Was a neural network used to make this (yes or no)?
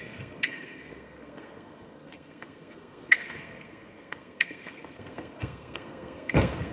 yes